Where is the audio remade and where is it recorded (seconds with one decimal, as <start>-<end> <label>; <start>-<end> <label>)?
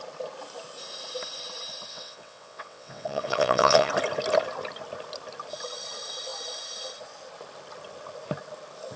0.0-1.9 recorded; 1.9-3.9 remade; 3.9-9.0 recorded